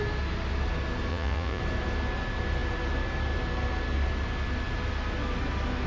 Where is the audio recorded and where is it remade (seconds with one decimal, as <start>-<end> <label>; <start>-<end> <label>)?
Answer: 0.0-1.1 recorded; 1.1-1.6 remade; 1.6-5.9 recorded